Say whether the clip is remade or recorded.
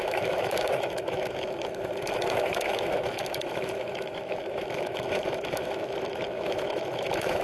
remade